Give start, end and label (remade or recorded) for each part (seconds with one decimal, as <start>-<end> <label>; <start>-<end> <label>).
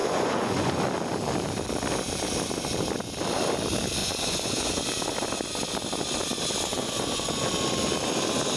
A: 0.0-0.8 remade; 0.8-4.0 recorded; 4.0-4.8 remade; 4.8-6.7 recorded; 6.7-7.5 remade; 7.5-8.6 recorded